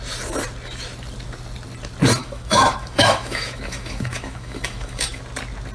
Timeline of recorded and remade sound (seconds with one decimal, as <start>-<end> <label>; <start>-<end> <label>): 0.0-2.2 recorded; 2.2-5.2 remade; 5.2-5.7 recorded